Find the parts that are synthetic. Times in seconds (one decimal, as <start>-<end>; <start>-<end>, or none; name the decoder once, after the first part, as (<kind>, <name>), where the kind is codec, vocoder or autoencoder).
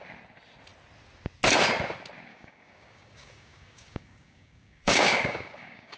2.3-6.0 (codec, DAC)